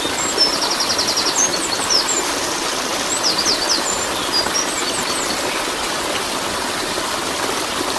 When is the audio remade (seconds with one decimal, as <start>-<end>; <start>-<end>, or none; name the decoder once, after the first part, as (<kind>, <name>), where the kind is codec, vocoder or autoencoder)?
none